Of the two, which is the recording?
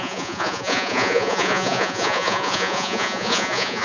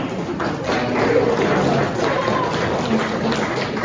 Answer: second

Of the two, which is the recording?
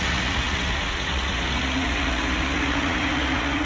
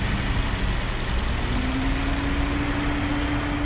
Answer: second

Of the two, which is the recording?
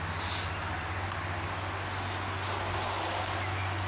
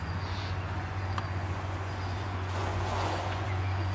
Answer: first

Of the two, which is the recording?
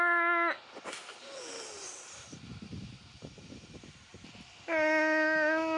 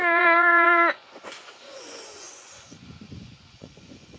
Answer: first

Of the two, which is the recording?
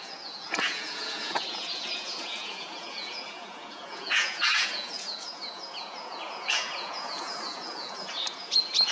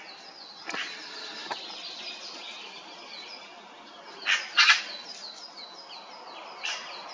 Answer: second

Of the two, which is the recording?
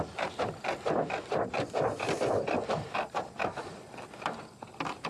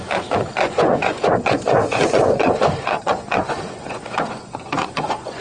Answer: first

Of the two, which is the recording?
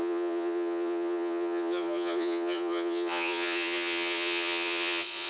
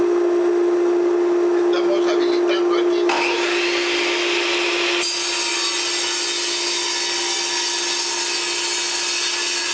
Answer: second